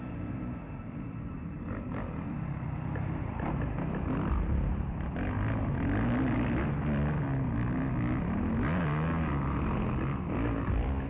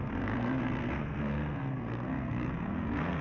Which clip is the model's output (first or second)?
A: second